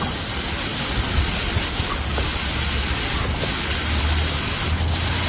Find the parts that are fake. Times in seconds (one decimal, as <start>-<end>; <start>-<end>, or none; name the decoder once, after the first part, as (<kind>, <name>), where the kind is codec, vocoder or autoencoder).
none

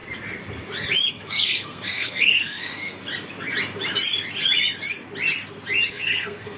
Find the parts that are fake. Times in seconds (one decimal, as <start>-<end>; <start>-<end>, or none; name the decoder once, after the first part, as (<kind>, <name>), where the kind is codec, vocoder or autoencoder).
1.1-3.0 (codec, SNAC); 5.9-6.6

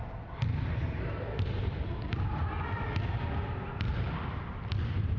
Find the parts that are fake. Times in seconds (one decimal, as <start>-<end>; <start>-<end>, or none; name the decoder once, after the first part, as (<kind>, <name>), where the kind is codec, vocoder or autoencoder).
0.8-2.4 (vocoder, BigVGAN v2); 3.9-4.4

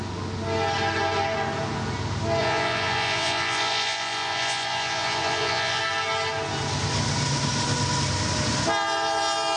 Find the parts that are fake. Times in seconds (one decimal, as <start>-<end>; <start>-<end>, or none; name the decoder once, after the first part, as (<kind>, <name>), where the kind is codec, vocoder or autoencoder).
2.4-5.8 (vocoder, Vocos)

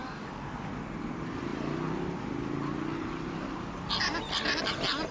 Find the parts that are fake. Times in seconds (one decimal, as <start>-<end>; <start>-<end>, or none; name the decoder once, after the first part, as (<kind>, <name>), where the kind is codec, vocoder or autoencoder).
0.0-0.7 (codec, DAC)

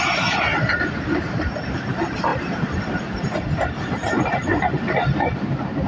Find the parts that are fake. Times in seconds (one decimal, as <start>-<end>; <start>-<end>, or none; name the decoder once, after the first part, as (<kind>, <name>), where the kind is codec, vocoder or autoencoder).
0.0-0.5 (vocoder, BigVGAN v2); 1.0-5.9

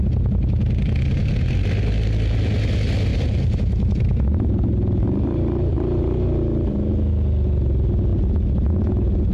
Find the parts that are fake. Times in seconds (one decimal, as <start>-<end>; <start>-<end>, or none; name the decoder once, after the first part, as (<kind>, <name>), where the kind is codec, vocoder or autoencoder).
3.1-6.9 (vocoder, BigVGAN v2)